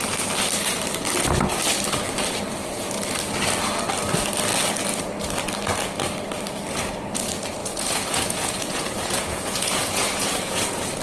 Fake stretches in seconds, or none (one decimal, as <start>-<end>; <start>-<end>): 7.6-11.0